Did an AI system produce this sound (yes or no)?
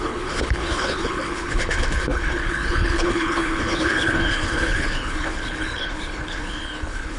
yes